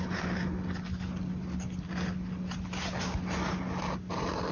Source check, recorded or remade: recorded